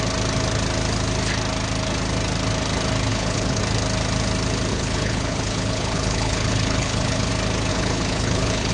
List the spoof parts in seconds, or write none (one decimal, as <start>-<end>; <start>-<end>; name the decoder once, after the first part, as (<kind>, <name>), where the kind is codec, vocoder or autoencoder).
3.1-3.6 (codec, HILCodec); 4.7-7.3; 7.7-8.7